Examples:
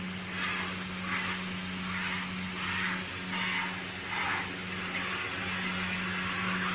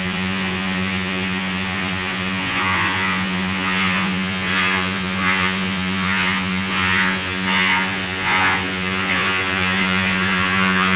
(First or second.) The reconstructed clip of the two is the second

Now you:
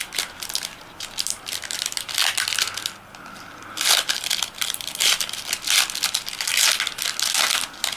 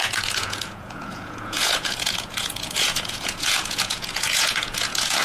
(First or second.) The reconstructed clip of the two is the second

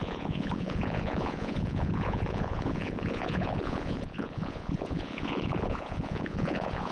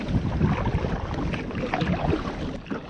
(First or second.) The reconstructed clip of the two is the first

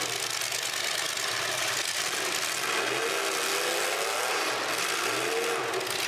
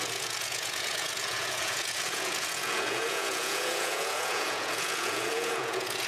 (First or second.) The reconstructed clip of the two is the second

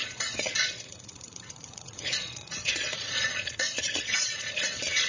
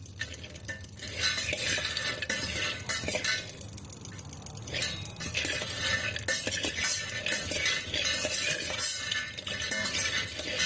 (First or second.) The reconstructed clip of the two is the first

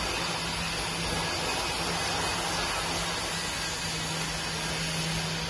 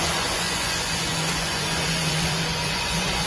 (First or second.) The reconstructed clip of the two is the second